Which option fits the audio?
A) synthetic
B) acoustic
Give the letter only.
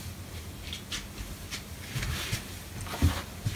B